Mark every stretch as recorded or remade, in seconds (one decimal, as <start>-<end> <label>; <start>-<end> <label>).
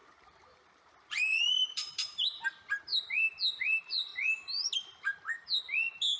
0.0-2.9 remade; 2.9-3.6 recorded; 3.6-4.1 remade; 4.1-6.2 recorded